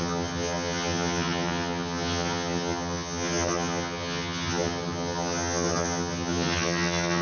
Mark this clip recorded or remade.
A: remade